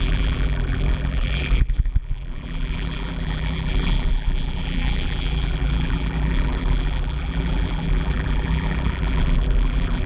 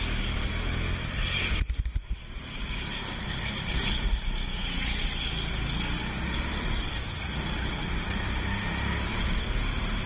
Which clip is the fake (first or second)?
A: first